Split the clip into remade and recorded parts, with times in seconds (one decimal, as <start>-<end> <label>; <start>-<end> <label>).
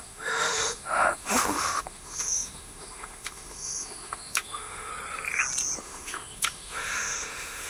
0.0-4.9 remade; 4.9-5.8 recorded; 5.8-7.7 remade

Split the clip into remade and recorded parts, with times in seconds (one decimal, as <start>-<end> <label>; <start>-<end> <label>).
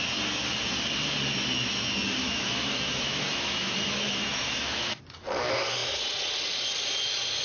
0.0-2.2 recorded; 2.2-5.0 remade; 5.0-7.4 recorded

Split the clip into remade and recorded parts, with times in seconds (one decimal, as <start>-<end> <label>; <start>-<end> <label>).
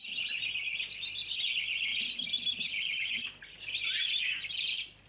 0.0-5.1 recorded